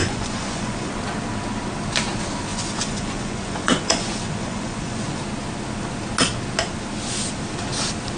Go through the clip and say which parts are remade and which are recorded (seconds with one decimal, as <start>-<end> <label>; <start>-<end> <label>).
0.0-0.9 remade; 0.9-2.5 recorded; 2.5-5.2 remade; 5.2-8.2 recorded